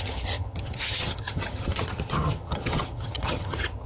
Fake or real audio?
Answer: fake